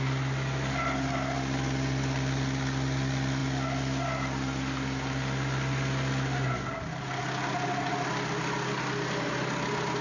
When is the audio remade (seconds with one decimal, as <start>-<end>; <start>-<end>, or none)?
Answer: none